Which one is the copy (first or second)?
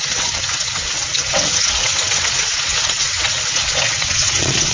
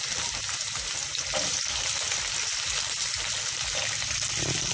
first